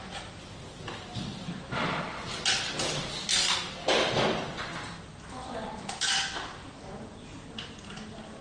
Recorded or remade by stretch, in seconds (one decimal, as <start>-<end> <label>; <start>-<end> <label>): 0.0-5.4 recorded; 5.4-5.9 remade; 5.9-8.4 recorded